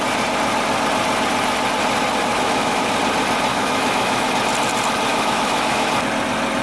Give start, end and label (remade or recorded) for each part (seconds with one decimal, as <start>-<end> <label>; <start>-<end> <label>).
0.0-2.3 recorded; 2.3-2.9 remade; 2.9-3.5 recorded; 3.5-4.3 remade; 4.3-5.1 recorded; 5.1-5.9 remade; 5.9-6.6 recorded